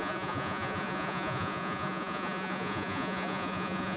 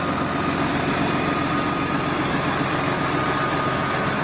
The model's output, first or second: first